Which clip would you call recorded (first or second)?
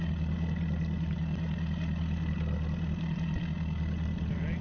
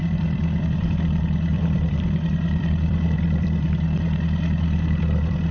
first